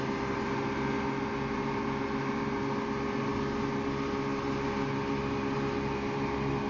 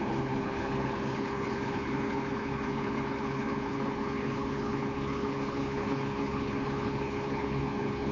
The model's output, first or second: second